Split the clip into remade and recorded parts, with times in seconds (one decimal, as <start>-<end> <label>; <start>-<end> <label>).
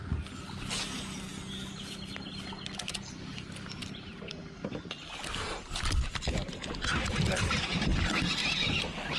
0.0-9.2 recorded